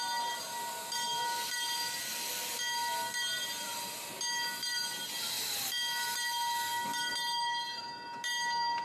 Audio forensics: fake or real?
real